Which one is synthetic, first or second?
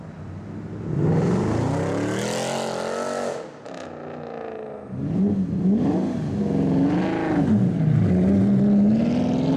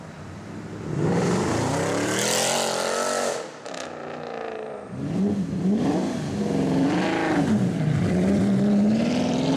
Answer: second